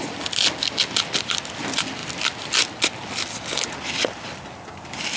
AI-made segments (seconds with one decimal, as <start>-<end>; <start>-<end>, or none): none